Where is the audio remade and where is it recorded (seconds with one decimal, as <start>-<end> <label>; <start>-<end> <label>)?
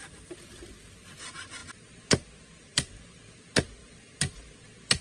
0.0-3.8 recorded; 3.8-4.5 remade; 4.5-5.0 recorded